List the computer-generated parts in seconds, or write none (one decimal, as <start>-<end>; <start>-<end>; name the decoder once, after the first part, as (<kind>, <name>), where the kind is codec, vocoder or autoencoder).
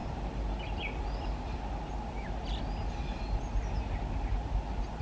none